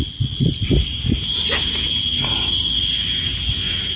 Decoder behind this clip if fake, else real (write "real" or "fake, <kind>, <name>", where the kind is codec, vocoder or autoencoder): real